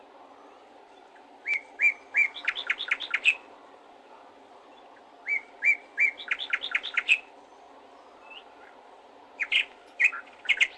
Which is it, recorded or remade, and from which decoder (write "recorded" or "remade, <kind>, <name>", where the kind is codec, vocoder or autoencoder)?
recorded